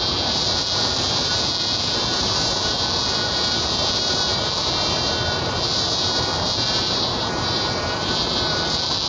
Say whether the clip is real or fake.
fake